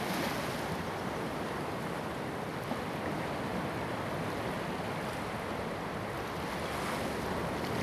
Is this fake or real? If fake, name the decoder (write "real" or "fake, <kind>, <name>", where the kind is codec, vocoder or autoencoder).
real